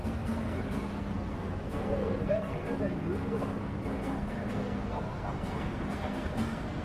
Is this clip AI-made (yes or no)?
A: yes